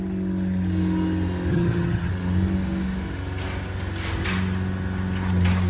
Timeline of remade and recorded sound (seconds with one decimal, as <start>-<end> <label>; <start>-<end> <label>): 0.0-1.5 recorded; 1.5-2.1 remade; 2.1-5.7 recorded